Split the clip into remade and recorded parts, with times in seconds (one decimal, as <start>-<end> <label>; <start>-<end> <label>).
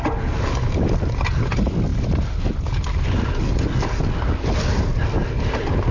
0.0-5.9 recorded